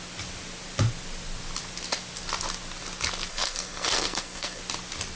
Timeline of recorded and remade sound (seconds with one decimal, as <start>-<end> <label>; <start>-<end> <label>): 0.0-3.3 recorded; 3.3-4.6 remade; 4.6-5.2 recorded